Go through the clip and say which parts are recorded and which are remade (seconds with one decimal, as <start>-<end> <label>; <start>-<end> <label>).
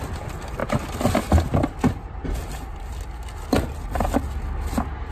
0.0-5.1 recorded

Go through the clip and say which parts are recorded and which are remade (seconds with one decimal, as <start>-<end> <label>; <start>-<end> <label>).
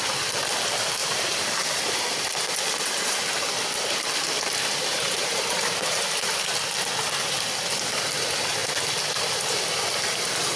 0.0-4.9 recorded; 4.9-6.1 remade; 6.1-10.6 recorded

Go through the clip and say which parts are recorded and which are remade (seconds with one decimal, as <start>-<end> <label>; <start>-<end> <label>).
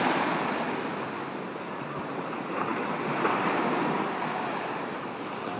0.0-5.6 recorded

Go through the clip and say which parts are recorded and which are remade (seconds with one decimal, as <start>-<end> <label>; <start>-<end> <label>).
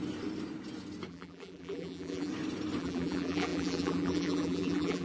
0.0-1.1 recorded; 1.1-2.3 remade; 2.3-2.8 recorded; 2.8-5.0 remade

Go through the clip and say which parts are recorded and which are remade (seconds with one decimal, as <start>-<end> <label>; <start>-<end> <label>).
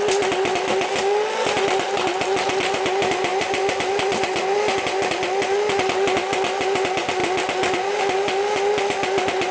0.0-3.3 recorded; 3.3-4.8 remade; 4.8-7.2 recorded; 7.2-8.0 remade; 8.0-9.5 recorded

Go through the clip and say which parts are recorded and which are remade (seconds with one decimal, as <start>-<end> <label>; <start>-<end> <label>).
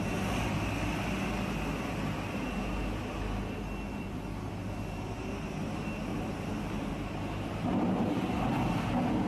0.0-6.1 recorded; 6.1-8.3 remade; 8.3-9.3 recorded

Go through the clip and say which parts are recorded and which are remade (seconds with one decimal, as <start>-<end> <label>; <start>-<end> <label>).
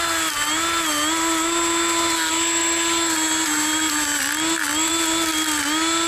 0.0-6.1 recorded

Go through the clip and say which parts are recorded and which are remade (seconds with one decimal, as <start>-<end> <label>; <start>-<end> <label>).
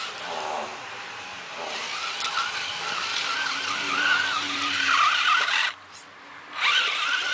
0.0-3.1 recorded; 3.1-5.7 remade; 5.7-7.3 recorded